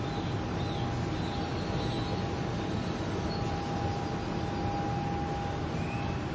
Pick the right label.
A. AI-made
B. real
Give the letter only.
B